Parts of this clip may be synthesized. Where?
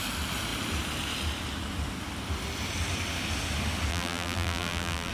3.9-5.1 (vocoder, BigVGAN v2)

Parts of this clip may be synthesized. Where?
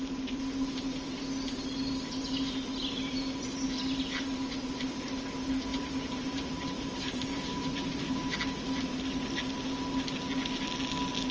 5.7-8.4 (vocoder, BigVGAN v2)